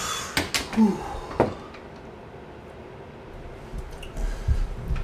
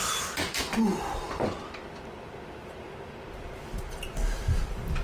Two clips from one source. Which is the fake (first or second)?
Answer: second